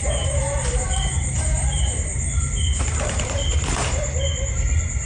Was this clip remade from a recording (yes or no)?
yes